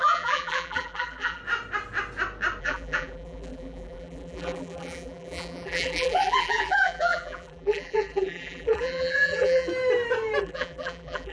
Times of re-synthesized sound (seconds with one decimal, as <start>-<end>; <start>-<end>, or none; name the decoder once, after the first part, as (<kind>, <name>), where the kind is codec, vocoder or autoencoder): 0.0-1.4 (vocoder, BigVGAN v2); 2.6-9.7; 10.4-11.3